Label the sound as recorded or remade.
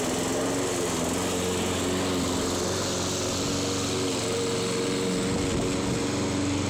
recorded